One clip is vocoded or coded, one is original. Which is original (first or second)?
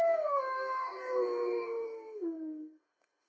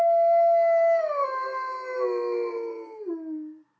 second